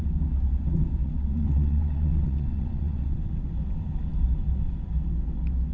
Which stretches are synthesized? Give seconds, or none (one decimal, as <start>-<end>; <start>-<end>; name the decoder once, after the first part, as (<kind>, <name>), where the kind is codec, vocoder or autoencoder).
1.0-3.3 (vocoder, WaveNeXt)